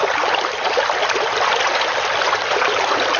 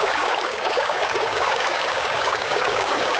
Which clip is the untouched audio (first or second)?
first